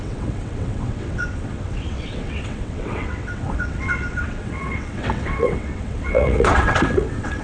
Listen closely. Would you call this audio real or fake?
fake